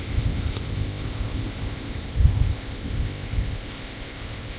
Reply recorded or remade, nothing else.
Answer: remade